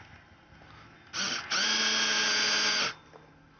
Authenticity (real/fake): real